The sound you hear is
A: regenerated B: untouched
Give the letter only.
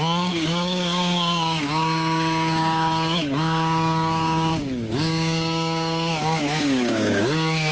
A